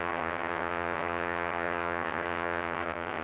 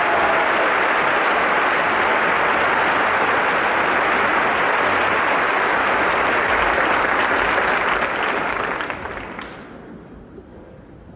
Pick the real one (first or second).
second